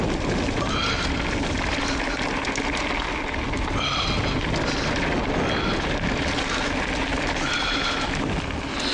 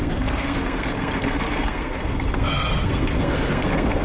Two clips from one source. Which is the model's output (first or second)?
second